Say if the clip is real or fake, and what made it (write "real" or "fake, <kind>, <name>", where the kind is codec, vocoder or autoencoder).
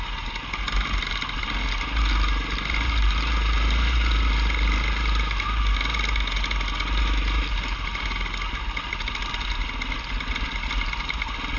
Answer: real